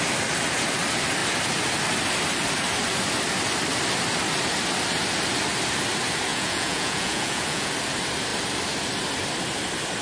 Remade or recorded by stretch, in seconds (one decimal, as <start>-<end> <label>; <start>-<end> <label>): 0.0-6.3 recorded; 6.3-7.7 remade; 7.7-10.0 recorded